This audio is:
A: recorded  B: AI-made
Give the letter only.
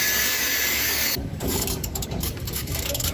B